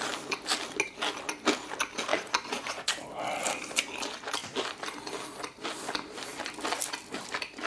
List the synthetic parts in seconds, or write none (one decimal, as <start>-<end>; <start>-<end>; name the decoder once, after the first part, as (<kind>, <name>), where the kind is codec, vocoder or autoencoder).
2.1-2.9 (vocoder, Vocos)